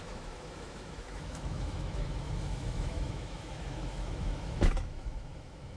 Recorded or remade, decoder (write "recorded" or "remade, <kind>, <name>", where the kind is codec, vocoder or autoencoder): remade, autoencoder, DAC-VAE